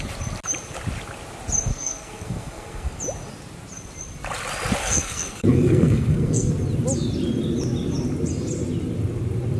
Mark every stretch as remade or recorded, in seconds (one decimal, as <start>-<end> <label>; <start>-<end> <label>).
0.0-1.7 recorded; 1.7-3.0 remade; 3.0-4.8 recorded; 4.8-6.5 remade; 6.5-9.6 recorded